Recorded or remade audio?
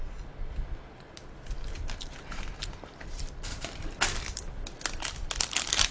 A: recorded